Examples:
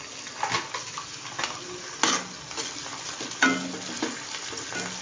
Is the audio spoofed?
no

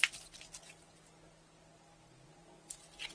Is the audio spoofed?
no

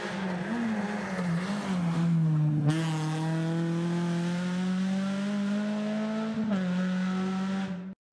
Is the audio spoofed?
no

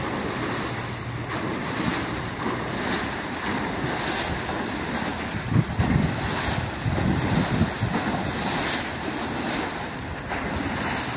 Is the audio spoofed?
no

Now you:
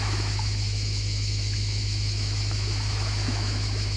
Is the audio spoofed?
yes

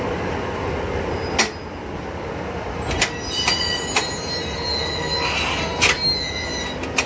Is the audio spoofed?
no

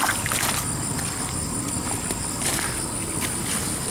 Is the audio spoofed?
no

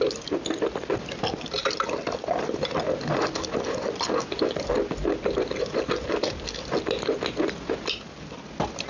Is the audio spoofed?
no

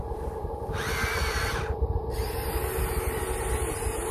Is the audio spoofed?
no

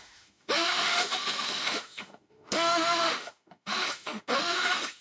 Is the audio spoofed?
yes